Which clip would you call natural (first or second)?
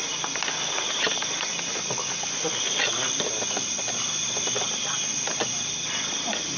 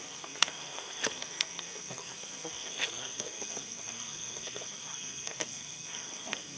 first